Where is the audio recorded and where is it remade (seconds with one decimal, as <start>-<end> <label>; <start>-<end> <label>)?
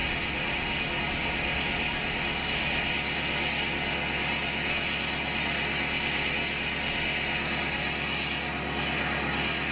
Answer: 0.0-9.7 recorded